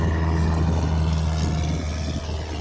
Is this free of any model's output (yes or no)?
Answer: yes